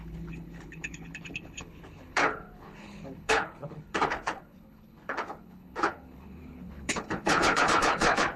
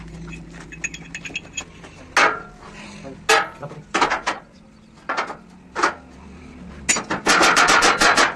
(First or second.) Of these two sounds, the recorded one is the second